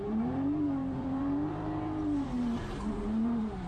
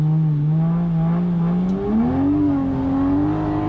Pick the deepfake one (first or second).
first